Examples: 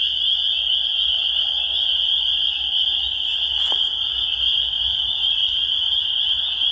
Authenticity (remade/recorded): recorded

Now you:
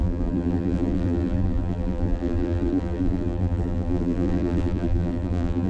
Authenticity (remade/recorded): remade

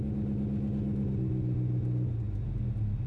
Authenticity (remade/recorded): recorded